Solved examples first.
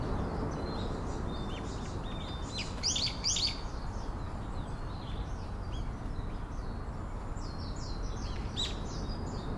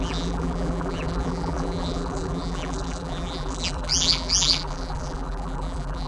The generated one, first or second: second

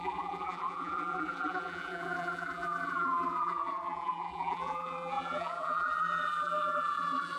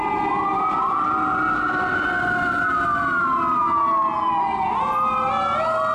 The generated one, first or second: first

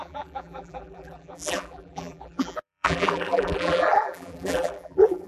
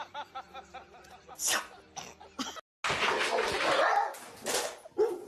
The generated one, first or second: first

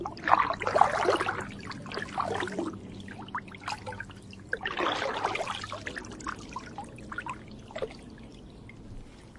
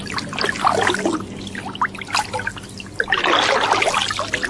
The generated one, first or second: first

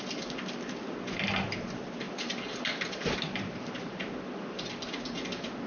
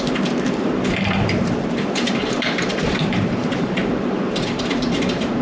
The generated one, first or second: second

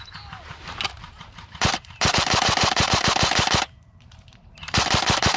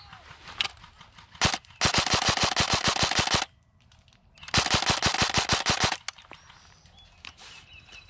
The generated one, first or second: first